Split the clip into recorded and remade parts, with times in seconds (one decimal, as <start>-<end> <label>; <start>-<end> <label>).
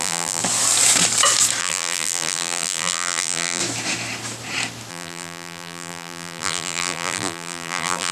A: 0.0-0.4 remade; 0.4-1.6 recorded; 1.6-3.6 remade; 3.6-4.9 recorded; 4.9-8.1 remade